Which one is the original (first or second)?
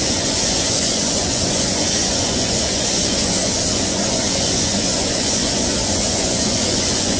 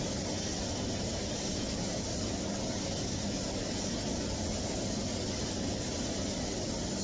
second